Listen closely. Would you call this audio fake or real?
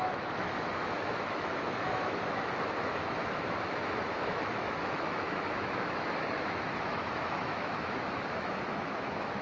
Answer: fake